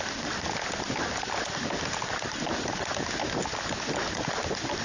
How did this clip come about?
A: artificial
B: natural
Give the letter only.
A